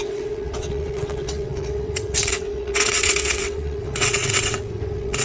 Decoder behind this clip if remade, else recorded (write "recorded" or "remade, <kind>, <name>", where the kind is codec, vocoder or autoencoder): remade, vocoder, WaveNeXt